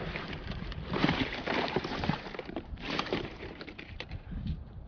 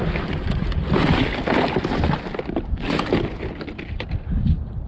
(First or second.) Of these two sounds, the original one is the second